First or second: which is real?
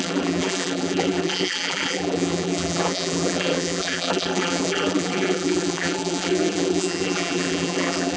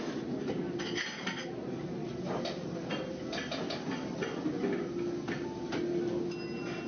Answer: second